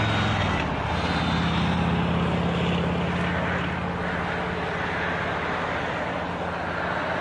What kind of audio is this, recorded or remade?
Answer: recorded